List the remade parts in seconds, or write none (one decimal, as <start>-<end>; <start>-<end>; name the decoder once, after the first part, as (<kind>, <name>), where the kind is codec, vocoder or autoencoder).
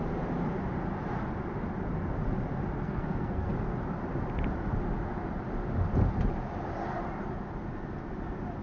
2.8-3.5 (codec, SNAC)